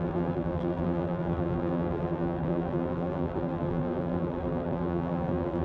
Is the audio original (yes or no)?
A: no